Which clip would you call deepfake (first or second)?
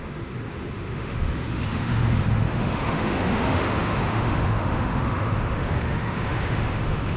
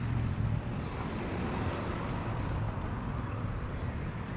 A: first